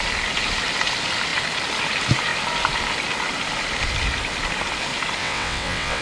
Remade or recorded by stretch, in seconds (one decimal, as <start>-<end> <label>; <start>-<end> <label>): 0.0-5.2 recorded; 5.2-6.0 remade